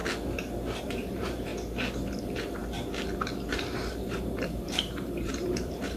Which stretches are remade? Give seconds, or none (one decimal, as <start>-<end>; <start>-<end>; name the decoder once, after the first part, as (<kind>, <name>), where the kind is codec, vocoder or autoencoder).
0.8-1.5 (vocoder, BigVGAN v2); 2.2-2.6; 3.5-6.0